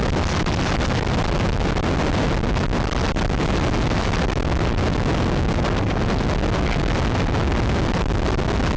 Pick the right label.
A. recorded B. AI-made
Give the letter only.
A